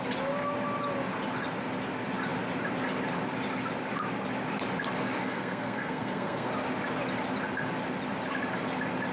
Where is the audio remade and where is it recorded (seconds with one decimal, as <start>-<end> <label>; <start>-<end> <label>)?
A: 0.0-5.2 recorded; 5.2-6.5 remade; 6.5-9.1 recorded